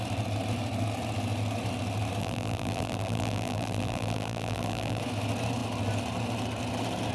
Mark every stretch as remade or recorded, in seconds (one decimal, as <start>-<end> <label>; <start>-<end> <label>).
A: 0.0-2.2 recorded; 2.2-5.0 remade; 5.0-7.1 recorded